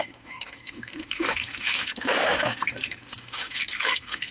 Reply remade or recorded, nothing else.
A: remade